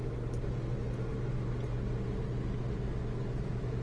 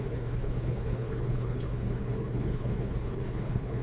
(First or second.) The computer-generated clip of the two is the second